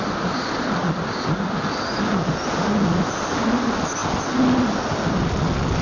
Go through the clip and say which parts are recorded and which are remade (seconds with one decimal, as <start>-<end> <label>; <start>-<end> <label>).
0.0-5.8 recorded